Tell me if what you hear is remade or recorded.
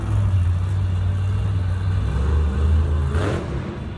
recorded